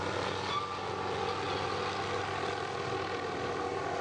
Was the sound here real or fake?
real